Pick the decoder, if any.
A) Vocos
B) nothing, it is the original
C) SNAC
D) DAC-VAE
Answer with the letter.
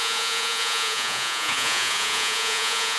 A